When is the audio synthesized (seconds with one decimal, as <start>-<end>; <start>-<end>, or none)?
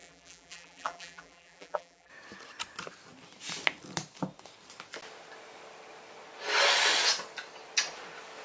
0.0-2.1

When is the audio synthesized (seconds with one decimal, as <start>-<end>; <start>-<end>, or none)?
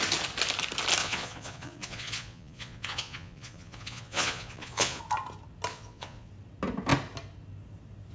1.0-5.0; 5.7-6.3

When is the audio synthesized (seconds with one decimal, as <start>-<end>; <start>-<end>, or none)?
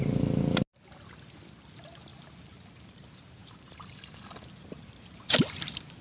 2.1-6.0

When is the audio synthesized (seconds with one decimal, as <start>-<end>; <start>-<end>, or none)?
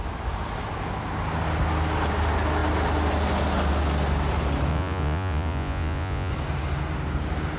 4.7-6.3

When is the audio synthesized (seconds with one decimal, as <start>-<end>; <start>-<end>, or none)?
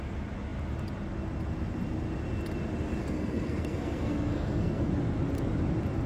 3.0-4.9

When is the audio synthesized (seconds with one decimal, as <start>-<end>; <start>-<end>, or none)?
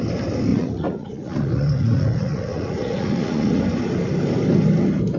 0.5-3.6